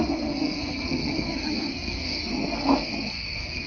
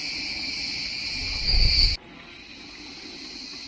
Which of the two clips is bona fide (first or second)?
second